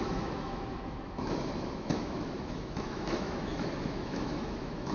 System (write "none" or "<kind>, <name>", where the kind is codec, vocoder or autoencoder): autoencoder, DAC-VAE